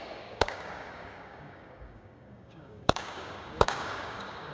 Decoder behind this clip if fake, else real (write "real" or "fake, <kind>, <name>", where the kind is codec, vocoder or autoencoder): fake, codec, DAC